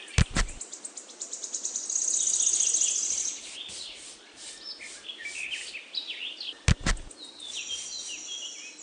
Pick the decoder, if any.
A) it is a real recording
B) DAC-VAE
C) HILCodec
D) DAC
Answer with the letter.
A